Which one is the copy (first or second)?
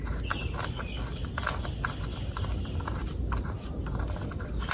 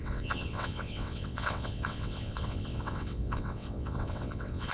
second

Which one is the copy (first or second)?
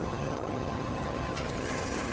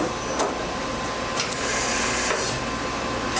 first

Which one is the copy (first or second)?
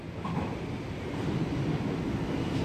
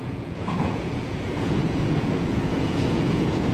second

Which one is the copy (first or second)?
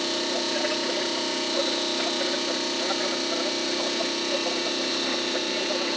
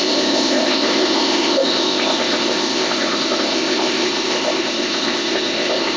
second